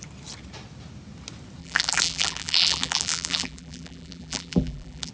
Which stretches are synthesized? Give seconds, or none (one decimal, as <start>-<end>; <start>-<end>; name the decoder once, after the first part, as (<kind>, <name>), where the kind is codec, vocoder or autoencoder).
1.6-5.1 (vocoder, BigVGAN v2)